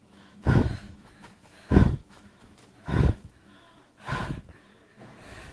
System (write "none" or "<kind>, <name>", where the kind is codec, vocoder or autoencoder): autoencoder, DAC-VAE